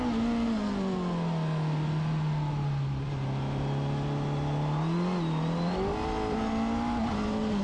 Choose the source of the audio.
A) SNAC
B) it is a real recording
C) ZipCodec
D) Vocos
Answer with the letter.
B